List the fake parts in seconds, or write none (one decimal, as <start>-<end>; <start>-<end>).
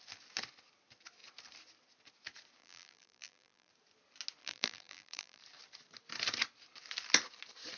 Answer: 2.6-3.7; 4.4-5.4